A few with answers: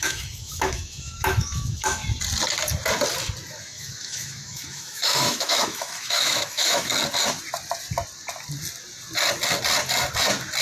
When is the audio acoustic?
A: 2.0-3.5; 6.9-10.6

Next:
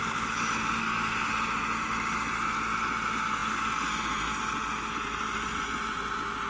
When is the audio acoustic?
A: 0.0-0.8; 1.3-6.5

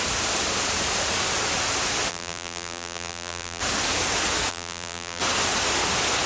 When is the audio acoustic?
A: 0.0-2.1; 3.6-4.5; 5.2-6.3

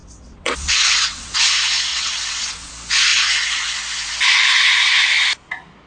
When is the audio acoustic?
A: 1.4-1.9; 2.7-5.9

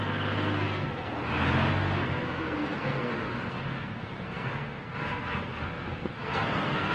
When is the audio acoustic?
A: 1.2-1.7